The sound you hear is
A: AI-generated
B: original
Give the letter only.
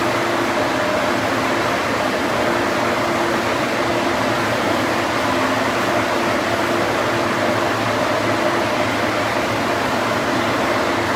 B